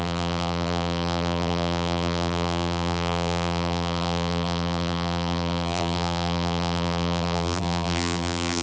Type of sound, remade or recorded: remade